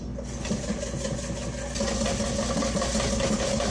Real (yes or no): yes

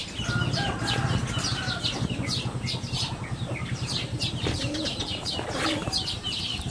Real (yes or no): yes